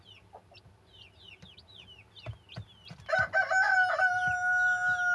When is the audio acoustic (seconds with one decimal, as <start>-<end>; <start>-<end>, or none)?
0.0-5.1